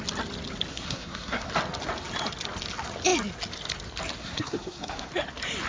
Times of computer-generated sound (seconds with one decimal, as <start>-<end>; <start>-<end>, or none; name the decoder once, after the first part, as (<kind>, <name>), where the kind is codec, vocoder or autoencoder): 0.7-1.5 (codec, SNAC); 4.2-5.1